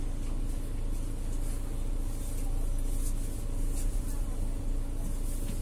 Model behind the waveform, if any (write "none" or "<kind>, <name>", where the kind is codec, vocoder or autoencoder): none